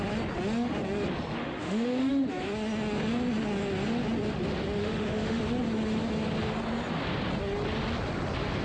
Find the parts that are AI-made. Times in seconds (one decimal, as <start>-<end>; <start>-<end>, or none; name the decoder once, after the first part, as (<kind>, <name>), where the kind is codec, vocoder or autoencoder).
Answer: 1.4-2.1 (autoencoder, DAC-VAE); 4.8-5.4